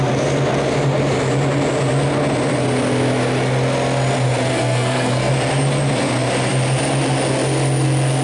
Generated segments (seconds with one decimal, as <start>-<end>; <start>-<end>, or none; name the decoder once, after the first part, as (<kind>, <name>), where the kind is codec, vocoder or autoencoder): 4.5-5.3 (codec, SNAC)